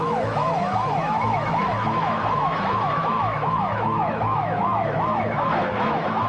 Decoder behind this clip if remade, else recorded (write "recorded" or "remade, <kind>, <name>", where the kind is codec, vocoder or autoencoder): remade, autoencoder, DAC-VAE